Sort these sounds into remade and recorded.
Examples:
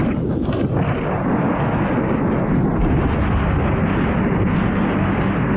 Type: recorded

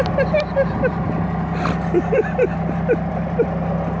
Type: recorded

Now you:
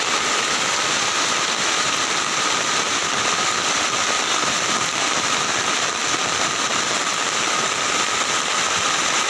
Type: recorded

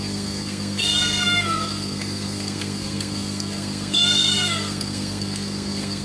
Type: remade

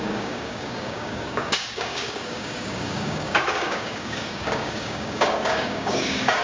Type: remade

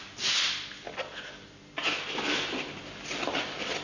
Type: recorded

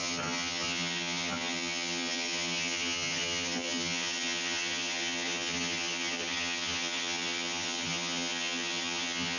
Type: remade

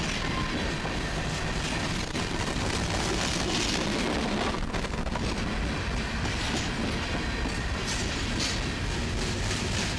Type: recorded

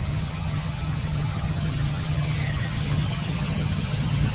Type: remade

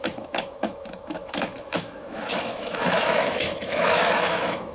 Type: remade